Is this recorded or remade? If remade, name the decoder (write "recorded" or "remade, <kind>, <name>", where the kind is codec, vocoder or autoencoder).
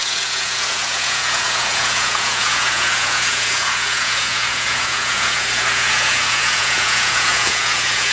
remade, vocoder, Vocos